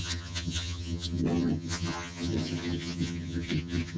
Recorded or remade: remade